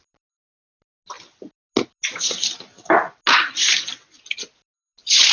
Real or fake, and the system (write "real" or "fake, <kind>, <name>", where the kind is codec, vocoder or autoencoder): real